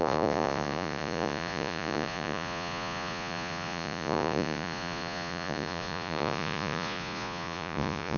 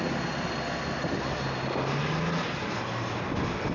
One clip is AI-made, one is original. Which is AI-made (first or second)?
first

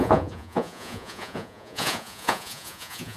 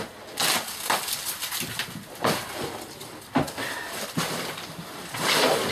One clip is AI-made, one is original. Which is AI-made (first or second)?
first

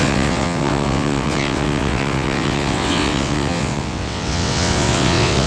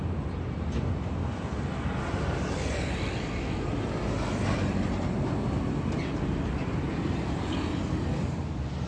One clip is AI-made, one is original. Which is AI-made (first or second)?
first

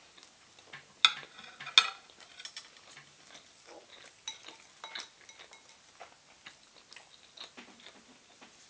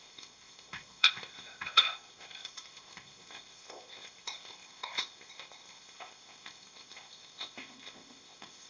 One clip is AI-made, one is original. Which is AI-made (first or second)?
second